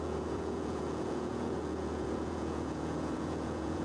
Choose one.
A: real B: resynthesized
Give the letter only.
B